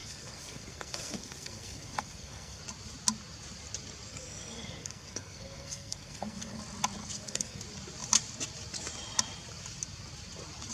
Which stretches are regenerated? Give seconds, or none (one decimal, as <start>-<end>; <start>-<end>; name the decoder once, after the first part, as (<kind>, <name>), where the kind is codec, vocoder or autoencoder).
0.0-2.6 (codec, SNAC); 4.1-6.6; 7.0-7.6